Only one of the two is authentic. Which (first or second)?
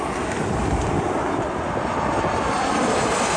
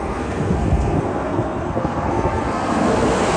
first